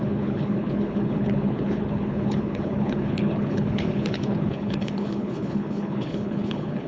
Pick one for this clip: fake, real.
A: fake